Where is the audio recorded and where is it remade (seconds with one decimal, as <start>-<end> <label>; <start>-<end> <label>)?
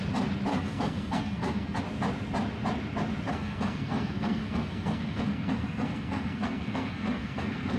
0.0-0.5 recorded; 0.5-1.8 remade; 1.8-3.3 recorded; 3.3-7.8 remade